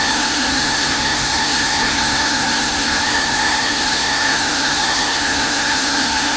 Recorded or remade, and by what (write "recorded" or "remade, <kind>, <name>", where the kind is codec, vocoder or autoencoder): remade, codec, SNAC